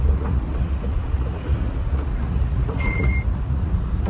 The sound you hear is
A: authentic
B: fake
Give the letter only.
B